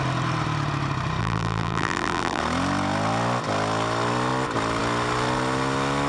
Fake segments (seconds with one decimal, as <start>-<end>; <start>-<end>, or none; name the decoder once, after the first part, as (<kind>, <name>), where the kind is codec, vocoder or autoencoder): 1.2-2.4 (vocoder, BigVGAN v2)